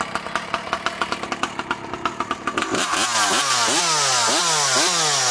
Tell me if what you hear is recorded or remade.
recorded